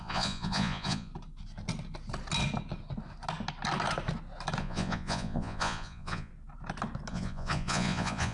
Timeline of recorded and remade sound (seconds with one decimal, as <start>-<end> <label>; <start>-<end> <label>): 0.0-1.1 remade; 1.1-4.6 recorded; 4.6-6.3 remade; 6.3-7.1 recorded; 7.1-8.3 remade